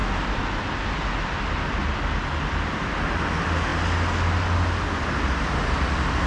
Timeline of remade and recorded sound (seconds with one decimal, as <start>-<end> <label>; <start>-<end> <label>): 0.0-6.3 recorded